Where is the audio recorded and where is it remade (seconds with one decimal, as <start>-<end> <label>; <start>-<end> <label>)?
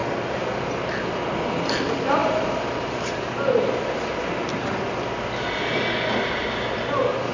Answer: 0.0-7.3 recorded